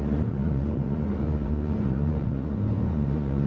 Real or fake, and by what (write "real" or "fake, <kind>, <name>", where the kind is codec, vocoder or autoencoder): fake, vocoder, Vocos